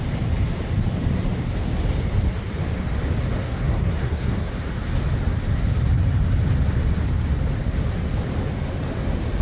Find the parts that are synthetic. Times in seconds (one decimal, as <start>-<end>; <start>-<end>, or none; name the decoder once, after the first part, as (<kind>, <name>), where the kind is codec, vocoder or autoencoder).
3.4-4.5 (codec, SNAC)